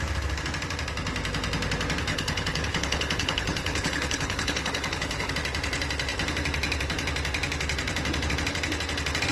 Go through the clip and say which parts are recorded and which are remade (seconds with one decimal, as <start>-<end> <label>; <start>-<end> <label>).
0.0-2.1 recorded; 2.1-5.3 remade; 5.3-9.3 recorded